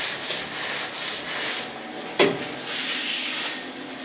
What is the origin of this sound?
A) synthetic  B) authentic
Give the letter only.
B